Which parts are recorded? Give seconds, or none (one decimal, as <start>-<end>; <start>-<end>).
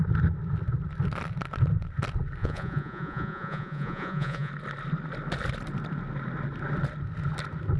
0.0-2.4; 4.5-7.8